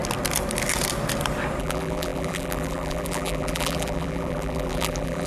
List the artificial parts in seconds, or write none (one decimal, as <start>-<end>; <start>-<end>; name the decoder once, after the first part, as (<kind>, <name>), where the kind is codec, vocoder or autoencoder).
1.6-5.3 (vocoder, BigVGAN v2)